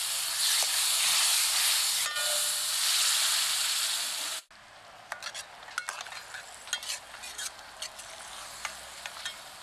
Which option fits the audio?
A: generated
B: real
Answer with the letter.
B